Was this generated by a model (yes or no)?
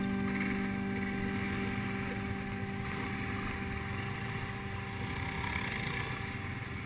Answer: no